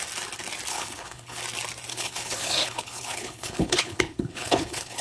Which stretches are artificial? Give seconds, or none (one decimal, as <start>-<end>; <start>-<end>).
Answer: 0.7-1.4; 1.9-5.0